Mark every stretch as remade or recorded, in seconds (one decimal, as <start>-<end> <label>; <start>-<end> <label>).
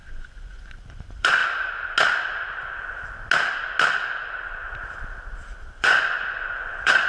0.0-1.4 remade; 1.4-5.7 recorded; 5.7-7.1 remade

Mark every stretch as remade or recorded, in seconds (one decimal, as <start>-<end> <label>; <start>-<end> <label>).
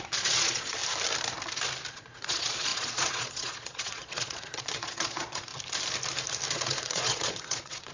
0.0-0.8 remade; 0.8-1.9 recorded; 1.9-5.5 remade; 5.5-6.5 recorded; 6.5-7.9 remade